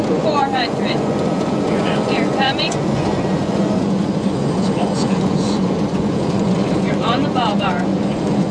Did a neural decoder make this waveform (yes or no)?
yes